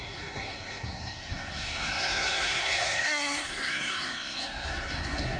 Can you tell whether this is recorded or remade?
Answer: remade